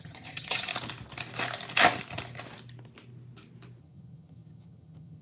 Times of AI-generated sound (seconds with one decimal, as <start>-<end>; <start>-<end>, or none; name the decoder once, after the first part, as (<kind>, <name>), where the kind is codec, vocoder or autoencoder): 0.0-0.7 (vocoder, HiFi-GAN); 3.8-5.2